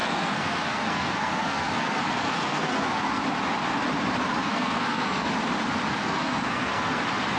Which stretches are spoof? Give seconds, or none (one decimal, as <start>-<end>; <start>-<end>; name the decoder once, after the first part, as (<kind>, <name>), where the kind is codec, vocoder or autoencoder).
0.0-3.2 (codec, SNAC); 4.4-5.3; 6.0-7.0